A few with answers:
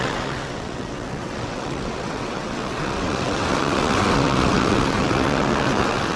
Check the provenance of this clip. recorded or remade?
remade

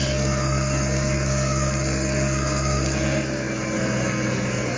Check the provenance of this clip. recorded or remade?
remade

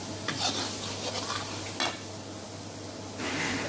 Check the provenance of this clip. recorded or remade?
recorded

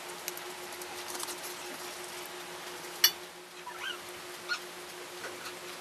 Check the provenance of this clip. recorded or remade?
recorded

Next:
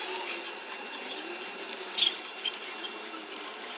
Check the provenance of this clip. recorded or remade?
recorded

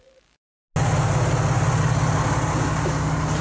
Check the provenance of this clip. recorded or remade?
recorded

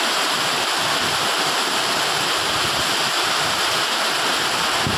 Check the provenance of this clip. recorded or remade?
recorded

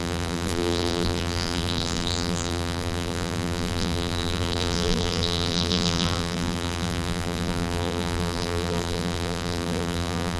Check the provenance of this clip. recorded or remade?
remade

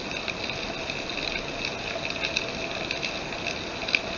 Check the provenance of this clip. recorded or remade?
recorded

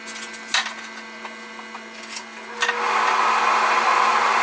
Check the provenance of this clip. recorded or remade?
recorded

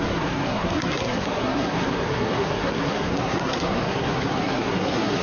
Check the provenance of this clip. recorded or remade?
remade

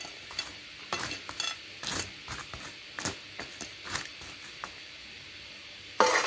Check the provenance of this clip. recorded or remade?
recorded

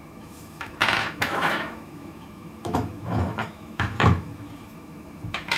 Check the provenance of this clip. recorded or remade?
remade